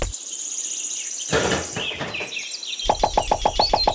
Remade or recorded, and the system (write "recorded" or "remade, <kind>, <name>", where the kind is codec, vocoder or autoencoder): recorded